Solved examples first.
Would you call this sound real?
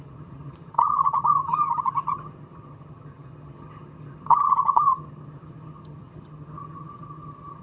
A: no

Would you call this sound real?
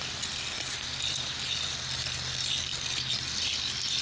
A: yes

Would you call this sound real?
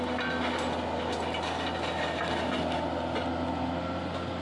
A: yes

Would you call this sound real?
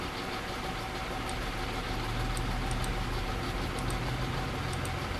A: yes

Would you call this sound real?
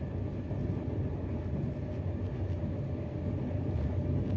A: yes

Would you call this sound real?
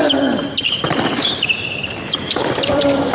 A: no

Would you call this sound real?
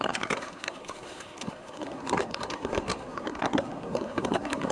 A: no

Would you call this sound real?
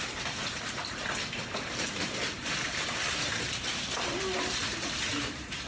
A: no